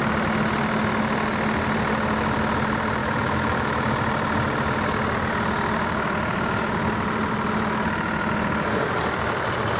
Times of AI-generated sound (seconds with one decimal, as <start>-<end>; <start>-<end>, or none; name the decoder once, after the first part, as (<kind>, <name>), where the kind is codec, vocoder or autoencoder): 3.0-3.9 (autoencoder, DAC-VAE)